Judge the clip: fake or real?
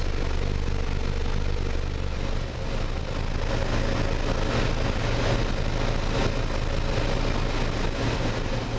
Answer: real